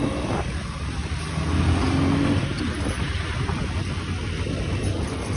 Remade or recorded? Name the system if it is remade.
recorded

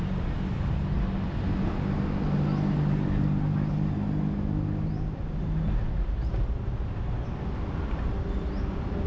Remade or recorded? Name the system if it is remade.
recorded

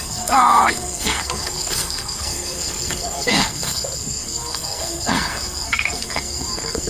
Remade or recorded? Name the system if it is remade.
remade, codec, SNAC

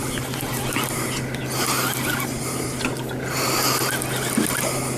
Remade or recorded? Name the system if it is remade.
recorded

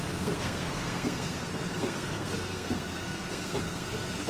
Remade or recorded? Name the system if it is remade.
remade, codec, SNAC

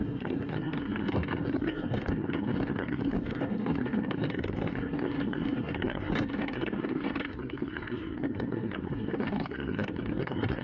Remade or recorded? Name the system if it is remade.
remade, codec, SNAC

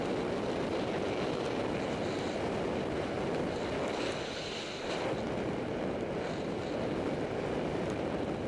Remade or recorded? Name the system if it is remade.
recorded